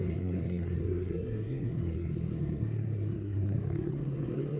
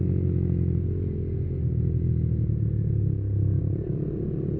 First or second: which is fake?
first